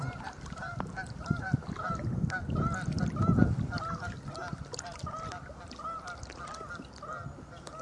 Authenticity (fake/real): real